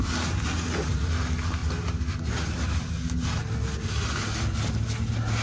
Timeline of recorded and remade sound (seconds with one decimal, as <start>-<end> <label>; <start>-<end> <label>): 0.0-5.4 recorded